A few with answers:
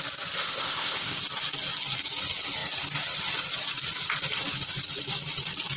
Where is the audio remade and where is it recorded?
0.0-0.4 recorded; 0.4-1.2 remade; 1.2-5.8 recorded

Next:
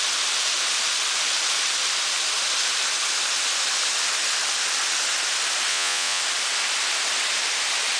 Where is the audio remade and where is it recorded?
0.0-5.7 recorded; 5.7-6.2 remade; 6.2-8.0 recorded

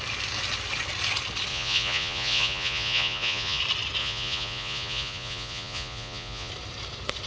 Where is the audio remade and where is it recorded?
0.0-1.5 recorded; 1.5-3.6 remade; 3.6-4.0 recorded; 4.0-6.5 remade; 6.5-7.3 recorded

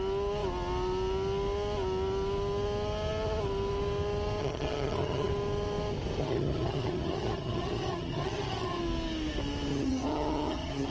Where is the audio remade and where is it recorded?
0.0-4.4 recorded; 4.4-5.3 remade; 5.3-6.2 recorded; 6.2-8.8 remade; 8.8-9.7 recorded; 9.7-10.9 remade

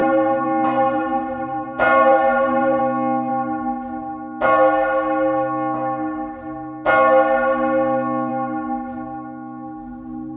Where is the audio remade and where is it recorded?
0.0-2.8 remade; 2.8-10.4 recorded

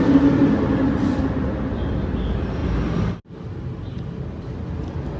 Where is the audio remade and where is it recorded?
0.0-0.4 recorded; 0.4-2.1 remade; 2.1-5.2 recorded

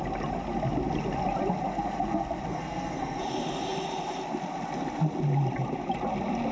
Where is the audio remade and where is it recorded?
0.0-2.5 recorded; 2.5-3.2 remade; 3.2-6.5 recorded

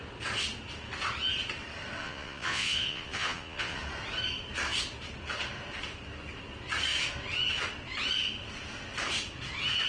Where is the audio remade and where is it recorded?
0.0-2.0 recorded; 2.0-3.8 remade; 3.8-9.9 recorded